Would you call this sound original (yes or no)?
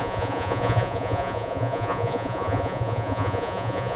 no